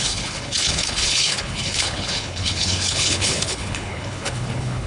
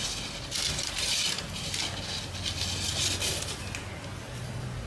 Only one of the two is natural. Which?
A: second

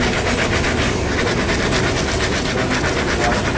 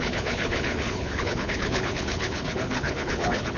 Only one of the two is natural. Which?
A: first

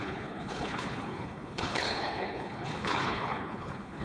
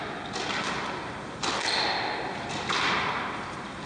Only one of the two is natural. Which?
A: second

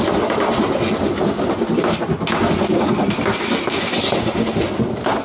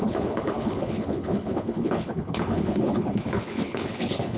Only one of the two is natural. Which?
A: first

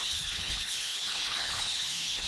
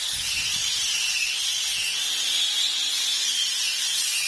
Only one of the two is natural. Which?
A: second